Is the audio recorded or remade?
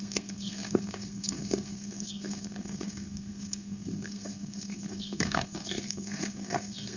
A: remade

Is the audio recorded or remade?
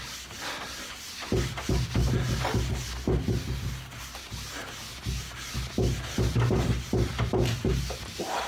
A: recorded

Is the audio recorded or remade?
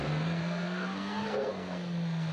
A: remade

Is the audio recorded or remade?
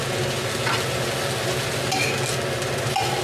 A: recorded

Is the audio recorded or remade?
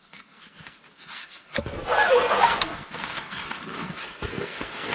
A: remade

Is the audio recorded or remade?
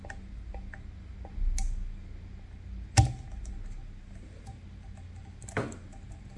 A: recorded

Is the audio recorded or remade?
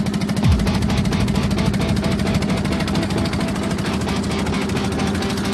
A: recorded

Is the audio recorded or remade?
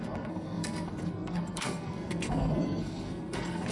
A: remade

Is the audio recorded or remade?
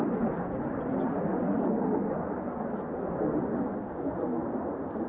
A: recorded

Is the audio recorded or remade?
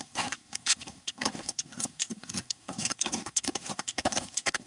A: remade